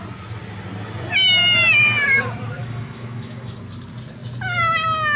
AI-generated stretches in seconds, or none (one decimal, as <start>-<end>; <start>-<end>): 2.6-3.6